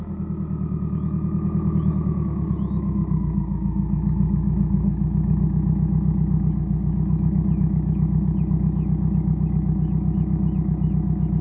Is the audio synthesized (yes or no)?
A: yes